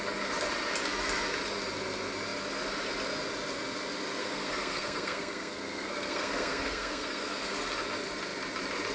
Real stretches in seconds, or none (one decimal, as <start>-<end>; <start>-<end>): 0.0-4.2; 7.5-8.9